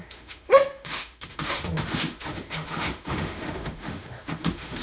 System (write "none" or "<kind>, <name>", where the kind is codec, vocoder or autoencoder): autoencoder, DAC-VAE